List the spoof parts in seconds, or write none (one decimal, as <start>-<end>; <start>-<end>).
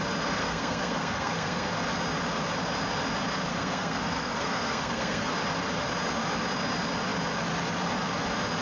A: 0.4-1.7; 3.5-5.3